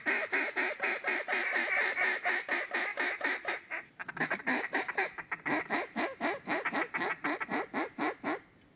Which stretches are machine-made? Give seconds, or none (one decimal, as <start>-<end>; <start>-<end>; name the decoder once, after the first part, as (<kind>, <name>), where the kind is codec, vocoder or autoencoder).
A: 0.0-8.8 (vocoder, BigVGAN v2)